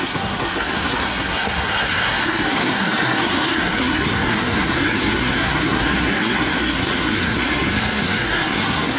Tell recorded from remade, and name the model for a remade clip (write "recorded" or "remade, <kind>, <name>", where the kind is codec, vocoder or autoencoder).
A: remade, codec, SNAC